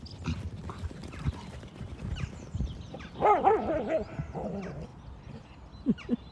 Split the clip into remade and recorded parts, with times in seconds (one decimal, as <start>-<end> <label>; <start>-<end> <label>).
0.0-1.0 recorded; 1.0-3.8 remade; 3.8-6.3 recorded